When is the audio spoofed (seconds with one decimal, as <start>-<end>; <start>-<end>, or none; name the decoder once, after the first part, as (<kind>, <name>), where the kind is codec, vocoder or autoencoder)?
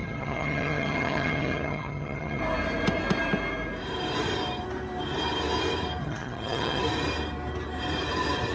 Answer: 0.0-2.4 (vocoder, HiFi-GAN); 6.0-6.8